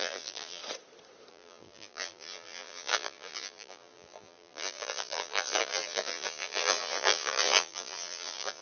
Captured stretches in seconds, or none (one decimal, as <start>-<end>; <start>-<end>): 0.6-1.3